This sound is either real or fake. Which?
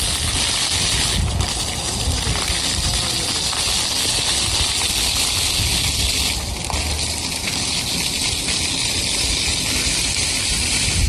real